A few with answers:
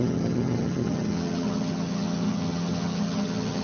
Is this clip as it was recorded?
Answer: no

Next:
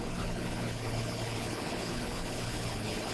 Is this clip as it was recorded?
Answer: no